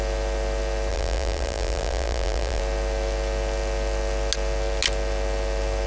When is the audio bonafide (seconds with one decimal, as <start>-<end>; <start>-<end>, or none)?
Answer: 0.0-0.9; 2.6-5.9